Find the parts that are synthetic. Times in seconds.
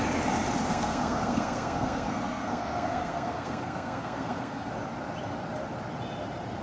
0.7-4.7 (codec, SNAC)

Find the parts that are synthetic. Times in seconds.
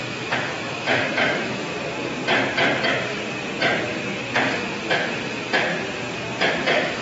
0.0-1.7 (autoencoder, DAC-VAE); 4.6-5.7; 6.5-7.0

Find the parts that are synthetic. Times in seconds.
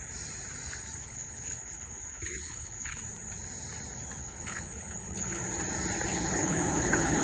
1.0-3.0 (codec, HILCodec); 4.2-5.4; 6.1-7.2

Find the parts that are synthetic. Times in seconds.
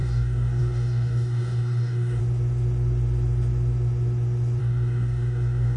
0.0-2.2 (codec, DAC); 4.6-5.8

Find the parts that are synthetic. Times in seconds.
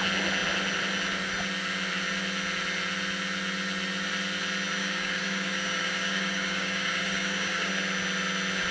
4.8-7.7 (codec, DAC)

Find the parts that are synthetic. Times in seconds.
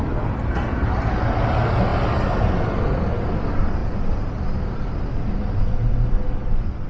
none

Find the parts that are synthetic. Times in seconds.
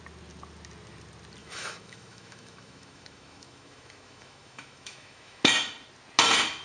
1.4-5.4 (autoencoder, DAC-VAE)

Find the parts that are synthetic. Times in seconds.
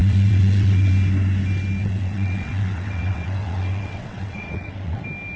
0.0-0.9 (vocoder, WaveNeXt); 1.8-5.0